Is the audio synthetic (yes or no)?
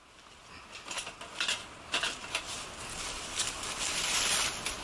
no